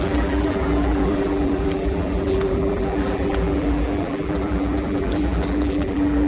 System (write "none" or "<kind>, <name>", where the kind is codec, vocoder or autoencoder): vocoder, BigVGAN v2